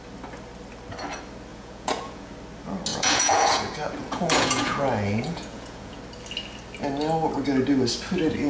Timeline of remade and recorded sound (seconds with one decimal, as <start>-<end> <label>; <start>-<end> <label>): 0.0-1.5 recorded; 1.5-2.3 remade; 2.3-2.9 recorded; 2.9-6.0 remade; 6.0-8.5 recorded